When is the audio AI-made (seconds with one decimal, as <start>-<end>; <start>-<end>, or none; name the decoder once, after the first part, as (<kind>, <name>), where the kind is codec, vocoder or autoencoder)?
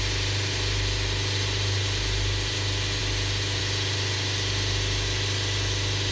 none